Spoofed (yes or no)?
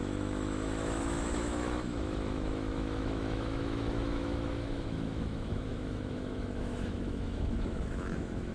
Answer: yes